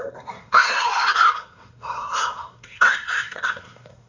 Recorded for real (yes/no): no